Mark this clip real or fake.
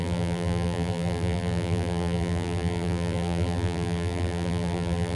fake